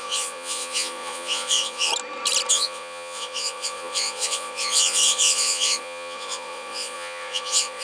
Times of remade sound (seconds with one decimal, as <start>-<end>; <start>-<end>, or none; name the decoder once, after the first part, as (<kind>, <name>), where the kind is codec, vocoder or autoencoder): 0.0-1.9 (vocoder, Vocos); 2.5-7.8